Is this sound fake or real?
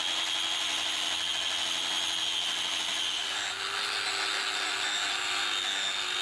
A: real